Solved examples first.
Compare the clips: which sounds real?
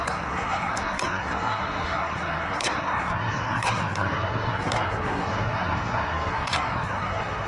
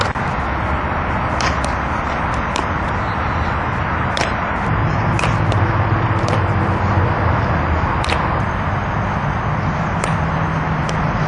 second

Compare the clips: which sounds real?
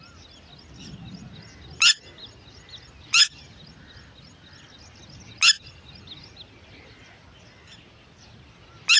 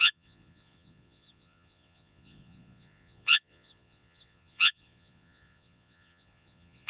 first